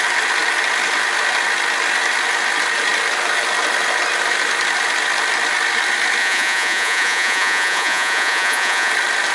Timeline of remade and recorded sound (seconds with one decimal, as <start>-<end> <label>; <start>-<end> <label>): 0.0-6.2 recorded; 6.2-8.9 remade; 8.9-9.3 recorded